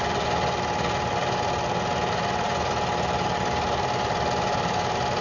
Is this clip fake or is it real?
real